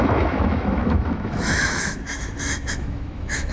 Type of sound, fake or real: fake